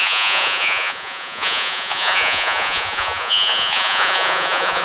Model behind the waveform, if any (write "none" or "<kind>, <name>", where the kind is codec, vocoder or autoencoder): vocoder, Vocos